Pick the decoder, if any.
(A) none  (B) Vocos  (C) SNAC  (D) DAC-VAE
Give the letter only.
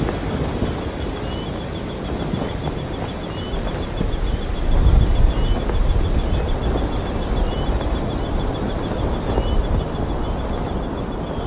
A